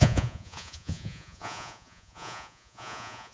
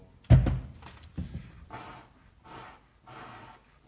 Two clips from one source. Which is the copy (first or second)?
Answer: first